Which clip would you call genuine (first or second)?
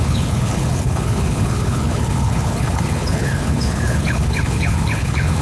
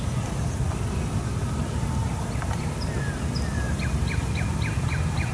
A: second